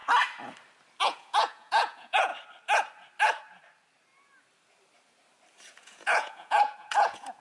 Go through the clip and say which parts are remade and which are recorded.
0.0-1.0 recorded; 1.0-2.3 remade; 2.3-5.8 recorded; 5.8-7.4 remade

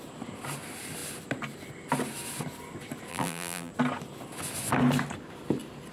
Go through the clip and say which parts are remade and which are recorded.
0.0-3.1 recorded; 3.1-3.7 remade; 3.7-5.9 recorded

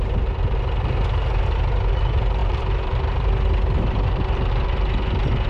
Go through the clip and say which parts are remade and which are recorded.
0.0-2.4 recorded; 2.4-4.5 remade; 4.5-5.5 recorded

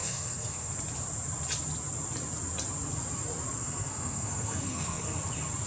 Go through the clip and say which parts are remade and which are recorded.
0.0-0.7 remade; 0.7-3.6 recorded; 3.6-5.1 remade; 5.1-5.7 recorded

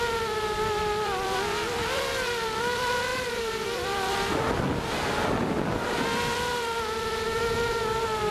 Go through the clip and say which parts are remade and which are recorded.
0.0-8.3 remade

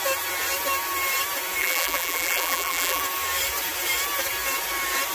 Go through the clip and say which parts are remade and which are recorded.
0.0-1.6 recorded; 1.6-3.0 remade; 3.0-5.1 recorded